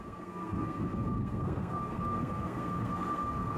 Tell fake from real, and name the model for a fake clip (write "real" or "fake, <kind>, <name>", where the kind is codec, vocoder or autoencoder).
fake, codec, SNAC